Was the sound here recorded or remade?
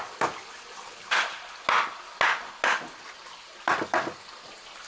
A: recorded